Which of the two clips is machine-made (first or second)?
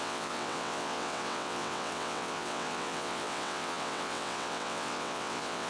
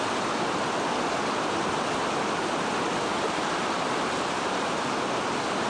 first